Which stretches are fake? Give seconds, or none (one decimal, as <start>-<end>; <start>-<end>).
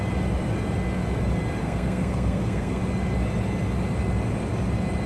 1.6-2.8